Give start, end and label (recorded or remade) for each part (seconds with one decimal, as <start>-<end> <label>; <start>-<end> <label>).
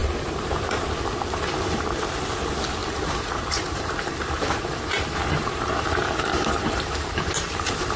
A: 0.0-1.8 remade; 1.8-2.8 recorded; 2.8-7.6 remade; 7.6-8.0 recorded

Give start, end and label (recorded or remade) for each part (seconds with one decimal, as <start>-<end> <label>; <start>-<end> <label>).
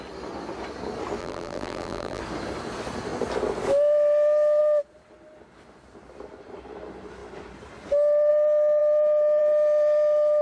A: 0.0-1.2 recorded; 1.2-2.2 remade; 2.2-10.4 recorded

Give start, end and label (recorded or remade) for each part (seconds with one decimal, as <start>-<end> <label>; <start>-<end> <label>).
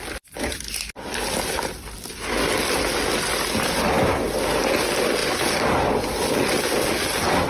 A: 0.0-7.5 recorded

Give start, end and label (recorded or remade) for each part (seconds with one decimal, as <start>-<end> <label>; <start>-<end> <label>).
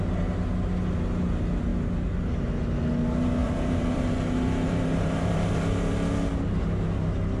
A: 0.0-3.4 recorded; 3.4-5.9 remade; 5.9-7.4 recorded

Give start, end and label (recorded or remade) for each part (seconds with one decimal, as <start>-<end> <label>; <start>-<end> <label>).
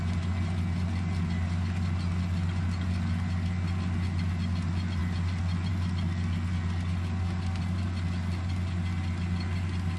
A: 0.0-10.0 recorded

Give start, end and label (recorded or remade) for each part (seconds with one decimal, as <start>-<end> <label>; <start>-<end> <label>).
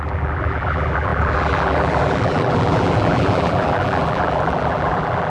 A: 0.0-5.3 remade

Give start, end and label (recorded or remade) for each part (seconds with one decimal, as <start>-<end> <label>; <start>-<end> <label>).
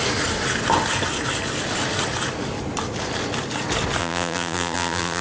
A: 0.0-4.0 recorded; 4.0-5.2 remade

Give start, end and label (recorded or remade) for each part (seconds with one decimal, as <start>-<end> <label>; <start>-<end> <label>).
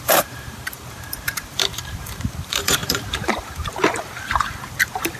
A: 0.0-5.2 remade